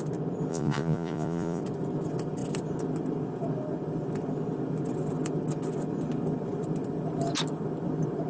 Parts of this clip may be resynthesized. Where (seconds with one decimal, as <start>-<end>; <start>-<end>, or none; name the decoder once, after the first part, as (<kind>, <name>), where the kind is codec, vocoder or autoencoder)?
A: 0.5-1.6 (vocoder, Vocos)